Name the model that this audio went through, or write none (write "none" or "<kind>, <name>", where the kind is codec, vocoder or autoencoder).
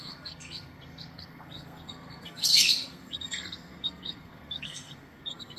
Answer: codec, SNAC